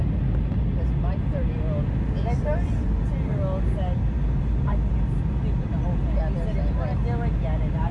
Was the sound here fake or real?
real